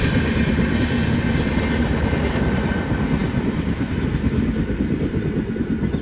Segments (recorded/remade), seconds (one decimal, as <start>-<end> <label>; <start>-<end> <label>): 0.0-6.0 recorded